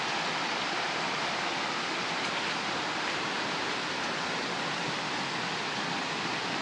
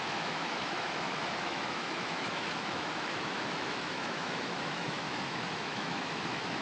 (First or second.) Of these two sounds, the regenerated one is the second